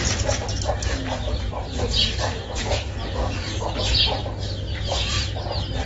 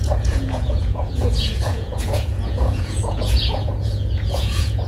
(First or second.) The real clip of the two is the first